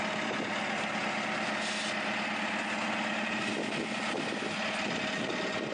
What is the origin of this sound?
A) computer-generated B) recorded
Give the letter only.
B